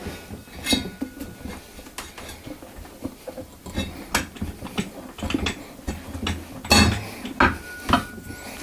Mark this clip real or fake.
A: real